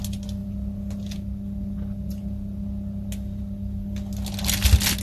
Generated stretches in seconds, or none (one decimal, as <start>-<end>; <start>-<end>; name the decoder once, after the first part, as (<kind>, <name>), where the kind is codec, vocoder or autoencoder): none